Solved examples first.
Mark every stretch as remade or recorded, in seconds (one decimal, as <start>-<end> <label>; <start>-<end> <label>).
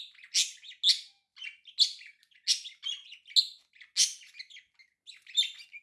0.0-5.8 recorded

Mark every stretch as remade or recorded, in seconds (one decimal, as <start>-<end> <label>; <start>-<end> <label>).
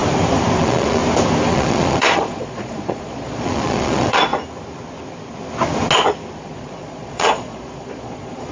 0.0-0.6 recorded; 0.6-1.0 remade; 1.0-1.5 recorded; 1.5-4.3 remade; 4.3-6.4 recorded; 6.4-8.5 remade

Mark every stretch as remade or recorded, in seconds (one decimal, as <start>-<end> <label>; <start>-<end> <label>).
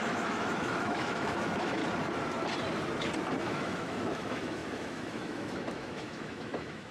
0.0-1.8 remade; 1.8-3.4 recorded; 3.4-6.9 remade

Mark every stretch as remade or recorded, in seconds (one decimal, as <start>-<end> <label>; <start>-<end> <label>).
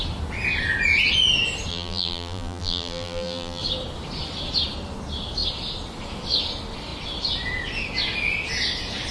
0.0-1.7 recorded; 1.7-3.6 remade; 3.6-9.1 recorded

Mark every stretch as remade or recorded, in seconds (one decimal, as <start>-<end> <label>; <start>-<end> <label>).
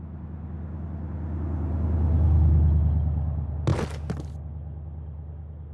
0.0-5.7 recorded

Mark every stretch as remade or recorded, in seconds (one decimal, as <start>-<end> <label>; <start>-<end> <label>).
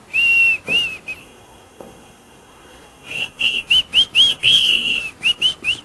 0.0-1.2 recorded; 1.2-3.7 remade; 3.7-4.3 recorded; 4.3-5.0 remade; 5.0-5.8 recorded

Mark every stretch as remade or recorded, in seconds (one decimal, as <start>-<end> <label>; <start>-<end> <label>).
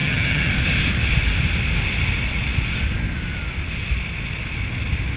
0.0-0.5 remade; 0.5-5.2 recorded